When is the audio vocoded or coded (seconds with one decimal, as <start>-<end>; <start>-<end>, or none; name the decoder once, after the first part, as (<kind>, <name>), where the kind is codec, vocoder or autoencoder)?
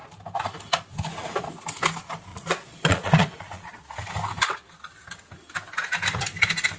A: 2.3-3.8 (vocoder, Vocos)